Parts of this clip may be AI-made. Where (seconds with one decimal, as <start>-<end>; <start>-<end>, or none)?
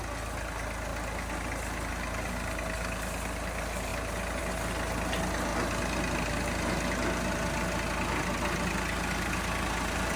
none